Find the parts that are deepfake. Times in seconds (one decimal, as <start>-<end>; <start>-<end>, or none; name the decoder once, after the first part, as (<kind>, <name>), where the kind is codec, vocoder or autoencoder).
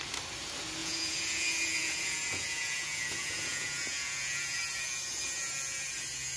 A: 0.8-4.6 (vocoder, Vocos)